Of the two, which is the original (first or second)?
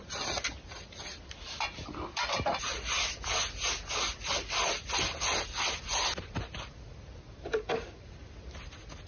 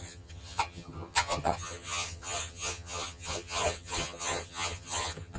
first